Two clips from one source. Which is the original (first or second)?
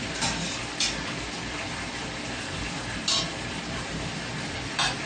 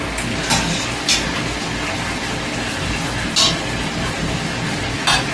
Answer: second